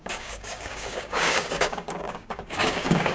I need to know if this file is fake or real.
fake